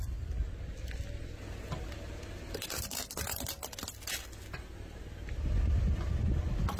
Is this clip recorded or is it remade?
recorded